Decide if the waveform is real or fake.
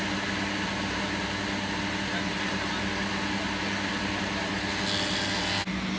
real